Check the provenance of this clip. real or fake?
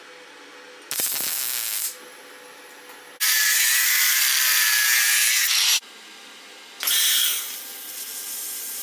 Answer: real